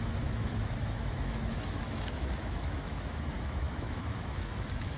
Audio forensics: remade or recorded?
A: remade